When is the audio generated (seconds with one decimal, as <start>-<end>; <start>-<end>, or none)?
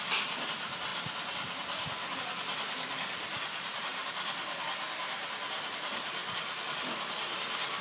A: 0.0-3.9; 5.7-7.8